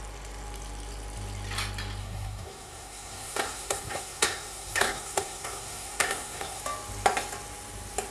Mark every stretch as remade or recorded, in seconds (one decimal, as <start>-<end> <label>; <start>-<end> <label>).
0.0-2.0 recorded; 2.0-6.6 remade; 6.6-8.1 recorded